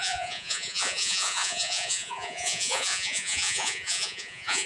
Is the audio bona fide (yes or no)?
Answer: no